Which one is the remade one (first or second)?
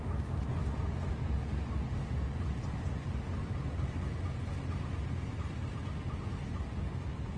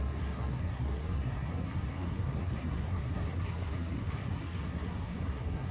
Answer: second